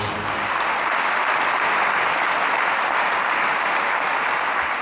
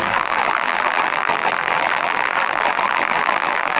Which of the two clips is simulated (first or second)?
second